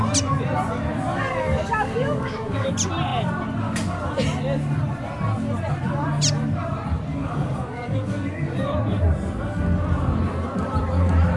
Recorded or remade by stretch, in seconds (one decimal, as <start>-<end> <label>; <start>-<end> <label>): 0.0-1.1 recorded; 1.1-2.7 remade; 2.7-7.1 recorded; 7.1-8.7 remade; 8.7-11.4 recorded